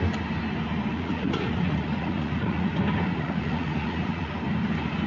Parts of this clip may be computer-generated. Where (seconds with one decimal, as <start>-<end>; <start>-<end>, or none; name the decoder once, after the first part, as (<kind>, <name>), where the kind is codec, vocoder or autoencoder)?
0.9-2.7 (vocoder, Vocos); 3.1-4.3